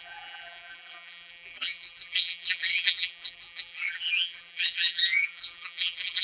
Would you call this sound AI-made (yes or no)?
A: yes